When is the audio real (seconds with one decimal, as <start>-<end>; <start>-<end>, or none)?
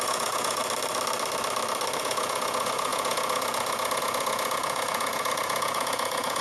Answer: 0.6-2.0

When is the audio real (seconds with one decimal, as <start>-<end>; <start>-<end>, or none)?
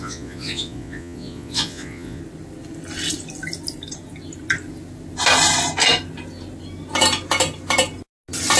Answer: 2.2-8.6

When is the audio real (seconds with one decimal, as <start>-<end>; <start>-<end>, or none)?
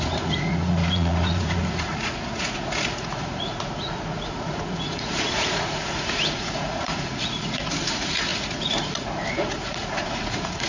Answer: none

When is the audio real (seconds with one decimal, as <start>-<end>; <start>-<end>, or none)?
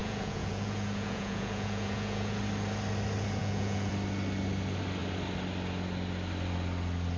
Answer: 2.4-3.4; 3.9-7.2